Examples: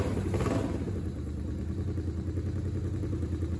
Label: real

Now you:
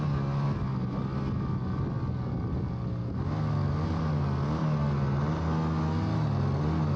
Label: real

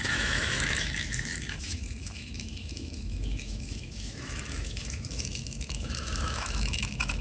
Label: fake